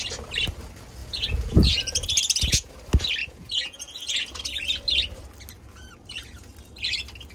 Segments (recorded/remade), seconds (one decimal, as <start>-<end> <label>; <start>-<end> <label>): 0.0-1.0 recorded; 1.0-2.7 remade; 2.7-3.2 recorded; 3.2-4.4 remade; 4.4-7.3 recorded